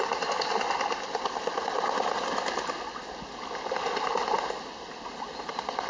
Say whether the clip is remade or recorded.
recorded